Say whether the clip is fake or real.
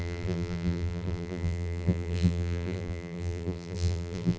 fake